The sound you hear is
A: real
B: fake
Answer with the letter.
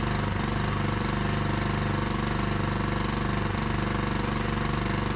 A